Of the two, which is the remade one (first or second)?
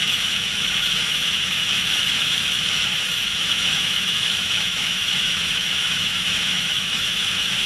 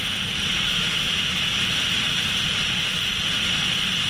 first